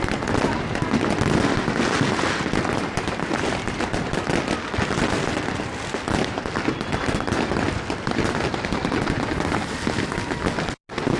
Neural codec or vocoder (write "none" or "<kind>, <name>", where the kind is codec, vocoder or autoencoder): none